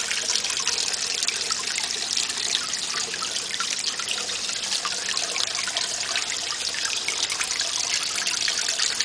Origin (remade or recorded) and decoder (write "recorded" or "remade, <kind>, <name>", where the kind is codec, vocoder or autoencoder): recorded